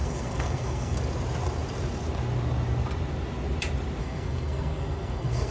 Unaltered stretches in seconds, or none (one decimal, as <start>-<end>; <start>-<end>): 1.0-4.0